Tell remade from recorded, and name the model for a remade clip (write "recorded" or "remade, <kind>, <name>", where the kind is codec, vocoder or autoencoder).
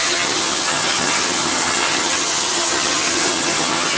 remade, vocoder, HiFi-GAN